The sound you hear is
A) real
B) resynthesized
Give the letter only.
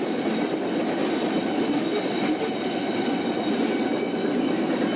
A